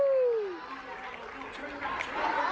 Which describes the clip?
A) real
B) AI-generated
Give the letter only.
A